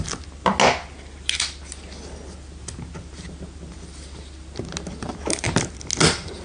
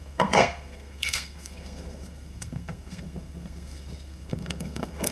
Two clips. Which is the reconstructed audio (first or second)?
second